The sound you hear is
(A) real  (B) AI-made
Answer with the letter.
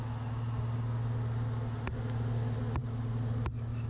A